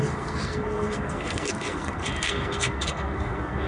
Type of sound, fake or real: fake